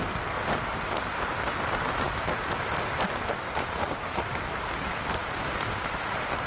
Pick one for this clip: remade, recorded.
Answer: recorded